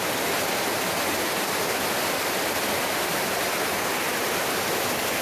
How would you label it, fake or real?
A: real